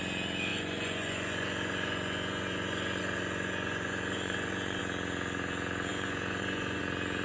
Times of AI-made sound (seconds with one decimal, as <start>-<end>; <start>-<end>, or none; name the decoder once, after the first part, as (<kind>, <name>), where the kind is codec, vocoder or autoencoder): 0.5-4.8 (vocoder, Vocos); 5.9-6.8